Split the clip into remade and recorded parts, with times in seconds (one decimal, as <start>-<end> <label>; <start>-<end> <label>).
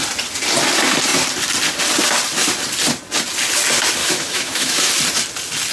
0.0-4.0 recorded; 4.0-4.9 remade; 4.9-5.7 recorded